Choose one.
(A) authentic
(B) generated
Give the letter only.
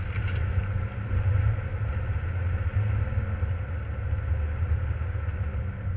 A